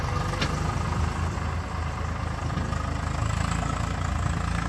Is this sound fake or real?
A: real